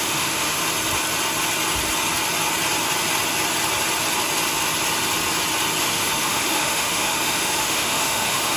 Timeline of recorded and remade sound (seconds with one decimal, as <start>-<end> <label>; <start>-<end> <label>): 0.0-0.6 remade; 0.6-5.8 recorded; 5.8-8.6 remade